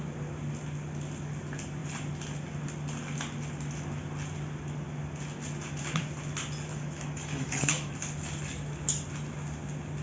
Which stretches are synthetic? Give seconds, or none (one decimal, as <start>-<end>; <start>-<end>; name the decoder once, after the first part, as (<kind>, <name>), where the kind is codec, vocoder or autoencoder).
6.7-7.9 (autoencoder, DAC-VAE)

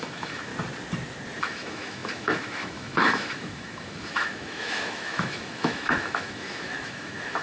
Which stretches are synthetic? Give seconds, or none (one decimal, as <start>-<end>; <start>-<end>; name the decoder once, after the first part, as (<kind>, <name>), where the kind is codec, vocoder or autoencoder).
0.0-0.5 (autoencoder, DAC-VAE); 1.4-7.4

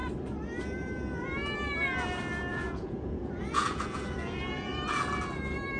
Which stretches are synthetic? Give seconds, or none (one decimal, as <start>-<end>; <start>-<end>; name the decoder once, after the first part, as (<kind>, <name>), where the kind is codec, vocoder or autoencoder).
2.5-5.1 (vocoder, Vocos)